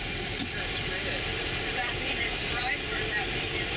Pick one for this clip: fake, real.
fake